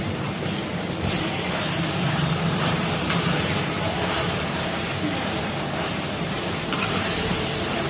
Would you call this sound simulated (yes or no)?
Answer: yes